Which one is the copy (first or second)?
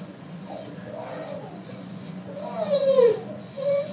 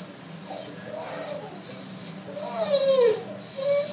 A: first